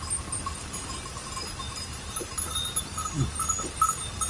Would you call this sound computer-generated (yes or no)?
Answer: no